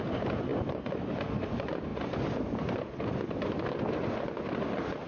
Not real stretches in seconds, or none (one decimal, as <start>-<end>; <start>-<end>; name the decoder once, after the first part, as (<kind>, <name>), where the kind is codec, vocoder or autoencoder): none